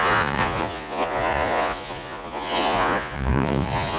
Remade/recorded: remade